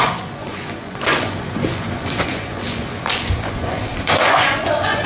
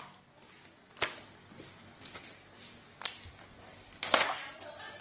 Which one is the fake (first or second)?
first